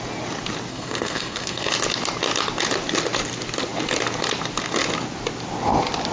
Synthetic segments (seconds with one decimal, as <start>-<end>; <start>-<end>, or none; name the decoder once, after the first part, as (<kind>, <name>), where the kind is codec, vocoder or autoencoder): 0.7-1.7 (codec, SNAC)